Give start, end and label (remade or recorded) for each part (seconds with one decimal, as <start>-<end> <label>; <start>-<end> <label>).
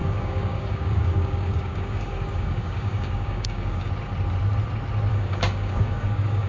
0.0-3.9 remade; 3.9-5.1 recorded; 5.1-6.5 remade